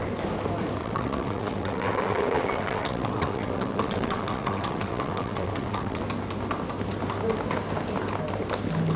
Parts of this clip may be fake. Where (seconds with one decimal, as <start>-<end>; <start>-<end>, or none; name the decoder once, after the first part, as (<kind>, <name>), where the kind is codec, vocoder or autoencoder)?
0.8-6.0 (vocoder, WaveNeXt)